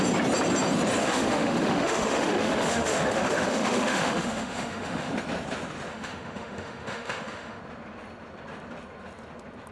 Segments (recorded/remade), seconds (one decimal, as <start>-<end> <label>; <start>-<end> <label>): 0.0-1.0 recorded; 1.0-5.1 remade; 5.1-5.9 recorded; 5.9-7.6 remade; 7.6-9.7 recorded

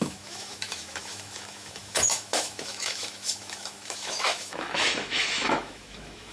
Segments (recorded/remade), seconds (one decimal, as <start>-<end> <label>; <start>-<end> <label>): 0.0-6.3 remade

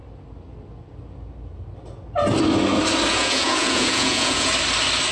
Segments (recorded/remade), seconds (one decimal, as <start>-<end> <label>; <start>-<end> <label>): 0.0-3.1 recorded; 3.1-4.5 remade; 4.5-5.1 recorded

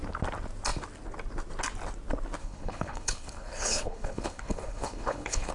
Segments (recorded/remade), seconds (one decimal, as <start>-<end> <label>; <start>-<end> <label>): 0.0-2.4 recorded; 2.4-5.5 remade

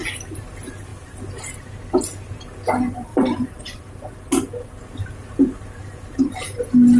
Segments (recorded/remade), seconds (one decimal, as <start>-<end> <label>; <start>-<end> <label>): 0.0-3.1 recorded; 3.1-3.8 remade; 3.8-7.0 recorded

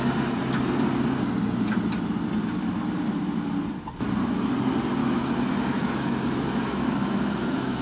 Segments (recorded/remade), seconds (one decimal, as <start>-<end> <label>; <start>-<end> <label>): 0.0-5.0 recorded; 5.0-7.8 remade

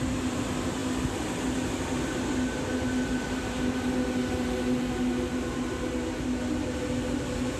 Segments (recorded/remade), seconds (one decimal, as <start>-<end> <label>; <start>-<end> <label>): 0.0-7.6 recorded

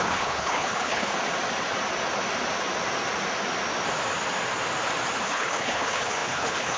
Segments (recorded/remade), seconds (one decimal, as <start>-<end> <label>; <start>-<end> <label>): 0.0-1.1 remade; 1.1-5.2 recorded; 5.2-6.8 remade